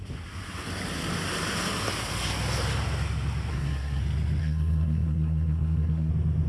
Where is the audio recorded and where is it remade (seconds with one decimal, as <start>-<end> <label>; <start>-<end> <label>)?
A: 0.0-3.5 recorded; 3.5-4.0 remade; 4.0-4.4 recorded; 4.4-6.1 remade; 6.1-6.5 recorded